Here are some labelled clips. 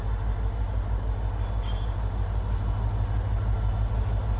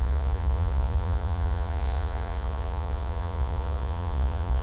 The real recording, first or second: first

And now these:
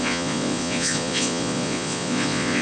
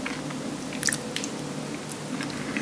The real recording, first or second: second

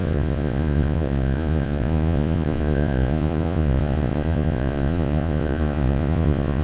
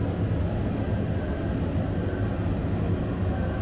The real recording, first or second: second